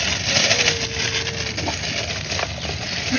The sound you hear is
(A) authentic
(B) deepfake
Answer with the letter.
A